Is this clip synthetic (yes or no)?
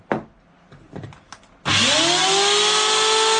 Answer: no